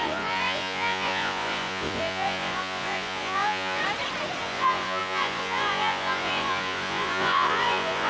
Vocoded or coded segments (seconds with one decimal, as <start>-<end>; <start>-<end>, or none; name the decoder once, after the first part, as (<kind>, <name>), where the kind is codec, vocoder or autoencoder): 0.0-3.8 (vocoder, Vocos); 4.4-8.1